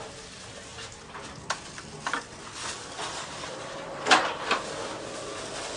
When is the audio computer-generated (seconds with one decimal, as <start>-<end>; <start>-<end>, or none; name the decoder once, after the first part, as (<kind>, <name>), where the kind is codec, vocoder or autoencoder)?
none